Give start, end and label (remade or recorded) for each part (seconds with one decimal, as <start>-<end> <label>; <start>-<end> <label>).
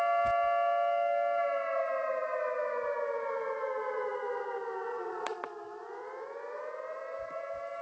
0.0-4.9 recorded; 4.9-5.5 remade; 5.5-7.8 recorded